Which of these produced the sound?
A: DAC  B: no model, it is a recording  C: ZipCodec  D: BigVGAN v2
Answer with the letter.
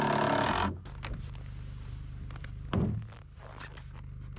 B